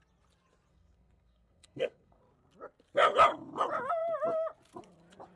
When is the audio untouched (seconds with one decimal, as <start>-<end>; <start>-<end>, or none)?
0.0-0.7; 2.2-5.4